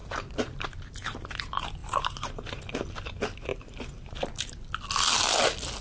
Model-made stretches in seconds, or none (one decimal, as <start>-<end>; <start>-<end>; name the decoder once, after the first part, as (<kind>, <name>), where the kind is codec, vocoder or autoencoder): 0.0-1.4 (vocoder, BigVGAN v2); 1.8-2.6; 3.5-4.5